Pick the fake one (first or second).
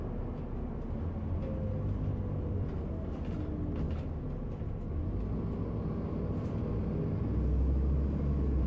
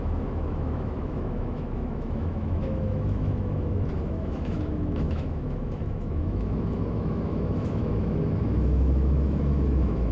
second